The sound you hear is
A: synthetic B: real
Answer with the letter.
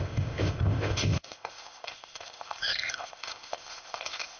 A